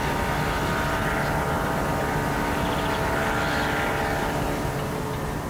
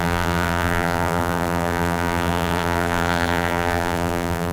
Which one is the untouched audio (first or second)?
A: first